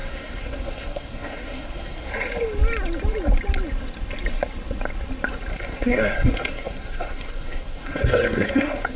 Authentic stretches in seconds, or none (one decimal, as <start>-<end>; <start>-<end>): 2.1-5.5